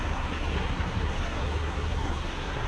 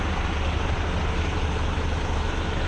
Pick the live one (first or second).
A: second